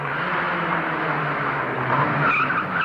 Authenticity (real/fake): real